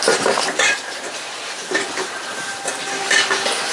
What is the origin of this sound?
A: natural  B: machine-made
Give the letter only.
B